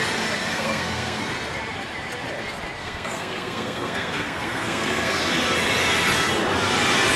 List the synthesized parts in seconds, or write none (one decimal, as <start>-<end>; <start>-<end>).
0.4-1.2; 2.8-5.2